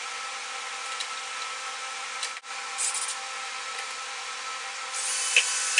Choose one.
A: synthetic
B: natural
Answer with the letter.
B